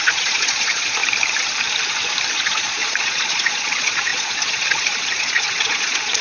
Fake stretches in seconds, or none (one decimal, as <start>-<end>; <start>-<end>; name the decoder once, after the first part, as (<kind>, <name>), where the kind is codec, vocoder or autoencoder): 0.0-1.0 (vocoder, Vocos); 2.3-6.2